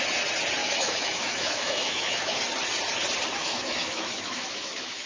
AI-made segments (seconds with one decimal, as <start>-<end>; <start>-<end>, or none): 0.6-2.4; 3.4-5.1